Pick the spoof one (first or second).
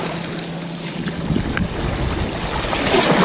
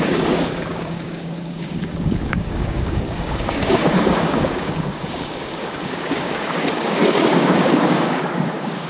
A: second